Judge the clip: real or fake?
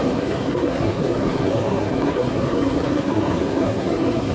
fake